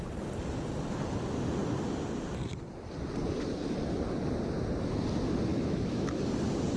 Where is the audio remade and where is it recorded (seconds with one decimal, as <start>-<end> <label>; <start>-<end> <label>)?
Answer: 0.0-5.5 recorded; 5.5-6.2 remade; 6.2-6.8 recorded